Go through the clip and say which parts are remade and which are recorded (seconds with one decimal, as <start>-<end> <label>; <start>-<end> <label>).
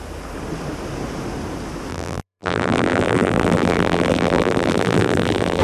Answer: 0.0-1.9 recorded; 1.9-5.6 remade